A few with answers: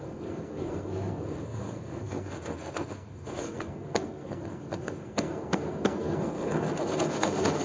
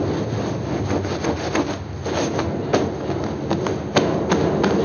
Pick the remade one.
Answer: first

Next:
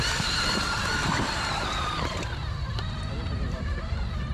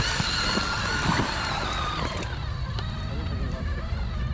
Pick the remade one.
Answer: first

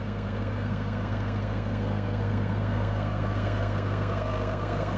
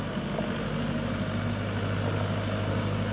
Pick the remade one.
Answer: first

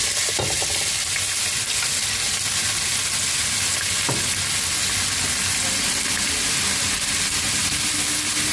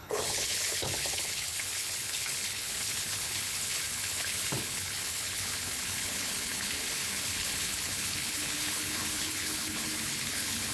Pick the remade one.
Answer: second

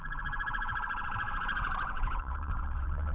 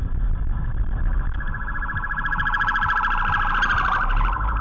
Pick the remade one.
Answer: first